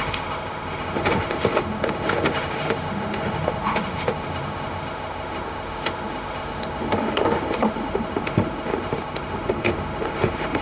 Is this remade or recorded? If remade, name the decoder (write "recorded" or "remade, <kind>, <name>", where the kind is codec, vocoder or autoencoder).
remade, autoencoder, DAC-VAE